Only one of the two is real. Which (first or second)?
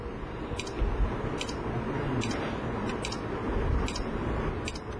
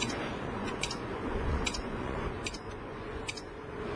first